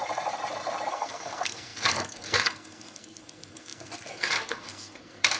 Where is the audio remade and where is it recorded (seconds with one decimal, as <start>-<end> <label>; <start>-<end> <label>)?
0.0-0.9 recorded; 0.9-5.4 remade